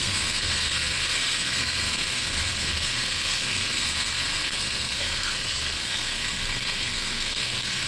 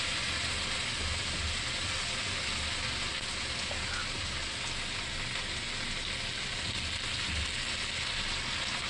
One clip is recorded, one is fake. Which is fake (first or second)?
first